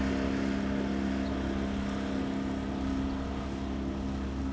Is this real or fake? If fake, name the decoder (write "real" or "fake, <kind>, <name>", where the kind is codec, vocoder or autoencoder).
real